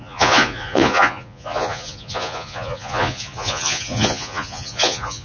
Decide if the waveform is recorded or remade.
remade